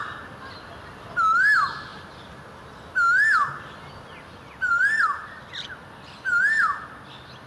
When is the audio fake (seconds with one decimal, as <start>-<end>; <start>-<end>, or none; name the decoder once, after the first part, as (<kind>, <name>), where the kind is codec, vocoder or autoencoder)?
none